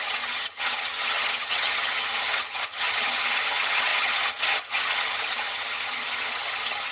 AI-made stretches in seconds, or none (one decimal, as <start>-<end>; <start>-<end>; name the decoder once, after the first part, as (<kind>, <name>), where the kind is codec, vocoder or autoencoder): 0.0-6.9 (vocoder, HiFi-GAN)